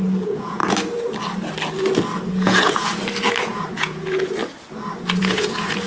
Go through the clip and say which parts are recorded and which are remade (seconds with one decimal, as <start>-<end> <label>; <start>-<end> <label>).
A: 0.0-0.6 remade; 0.6-2.3 recorded; 2.3-2.9 remade; 2.9-3.4 recorded; 3.4-4.4 remade; 4.4-5.2 recorded; 5.2-5.9 remade